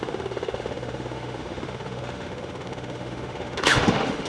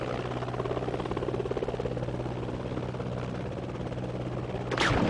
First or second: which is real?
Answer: second